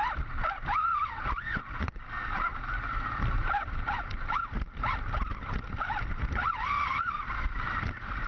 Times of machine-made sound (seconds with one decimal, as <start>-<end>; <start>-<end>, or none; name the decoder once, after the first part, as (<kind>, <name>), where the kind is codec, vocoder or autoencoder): 0.0-0.9 (vocoder, BigVGAN v2); 5.0-8.3